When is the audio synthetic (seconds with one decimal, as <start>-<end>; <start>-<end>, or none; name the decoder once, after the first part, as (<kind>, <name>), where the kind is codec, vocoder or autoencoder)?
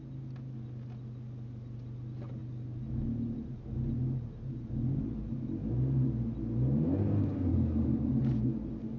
7.5-8.1 (codec, DAC)